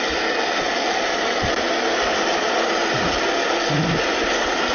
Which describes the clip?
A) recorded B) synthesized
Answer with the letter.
A